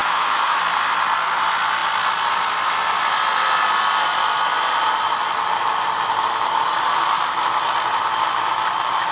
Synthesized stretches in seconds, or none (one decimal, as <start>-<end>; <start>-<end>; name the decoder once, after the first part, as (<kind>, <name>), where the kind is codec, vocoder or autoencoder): 0.0-0.6 (autoencoder, DAC-VAE)